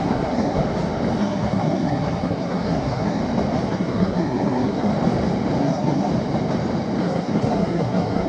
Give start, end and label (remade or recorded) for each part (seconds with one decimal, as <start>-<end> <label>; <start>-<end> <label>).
0.0-0.6 remade; 0.6-1.2 recorded; 1.2-3.2 remade; 3.2-3.7 recorded; 3.7-4.9 remade; 4.9-5.6 recorded; 5.6-6.1 remade; 6.1-7.0 recorded; 7.0-8.3 remade